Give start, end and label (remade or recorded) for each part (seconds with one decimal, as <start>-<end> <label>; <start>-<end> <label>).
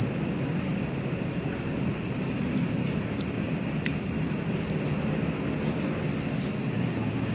0.0-0.7 recorded; 0.7-5.0 remade; 5.0-6.6 recorded; 6.6-7.3 remade